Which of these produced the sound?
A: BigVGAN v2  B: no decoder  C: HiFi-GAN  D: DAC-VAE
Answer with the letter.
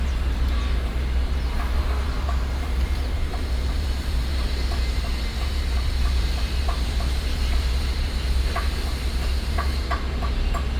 A